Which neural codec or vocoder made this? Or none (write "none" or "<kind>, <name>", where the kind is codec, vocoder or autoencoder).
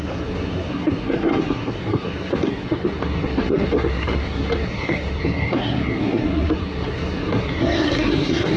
codec, SNAC